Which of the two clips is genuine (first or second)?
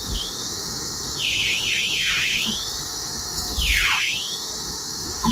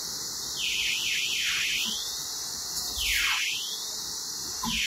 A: second